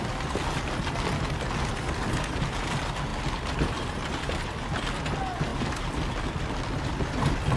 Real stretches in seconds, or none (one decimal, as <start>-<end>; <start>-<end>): 0.0-7.6